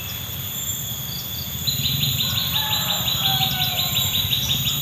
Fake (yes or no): no